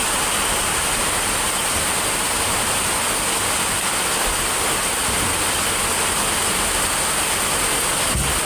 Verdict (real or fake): real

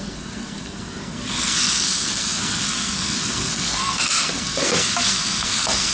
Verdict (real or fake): fake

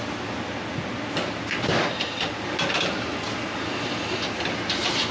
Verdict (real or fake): real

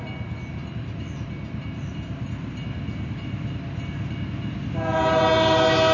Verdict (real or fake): real